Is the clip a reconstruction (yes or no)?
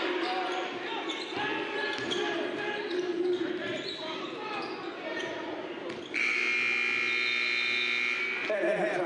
no